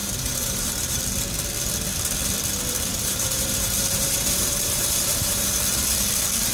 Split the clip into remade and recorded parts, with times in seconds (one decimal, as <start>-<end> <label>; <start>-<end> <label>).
0.0-1.0 remade; 1.0-2.9 recorded; 2.9-5.6 remade; 5.6-6.5 recorded